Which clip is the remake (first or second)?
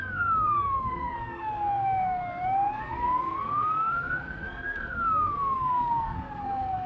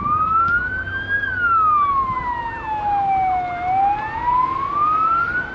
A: first